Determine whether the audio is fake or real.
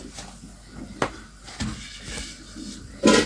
real